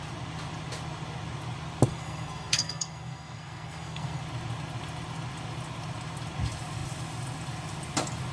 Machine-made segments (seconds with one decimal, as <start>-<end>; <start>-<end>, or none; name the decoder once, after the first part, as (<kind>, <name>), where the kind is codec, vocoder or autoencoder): 1.9-4.2 (codec, SNAC)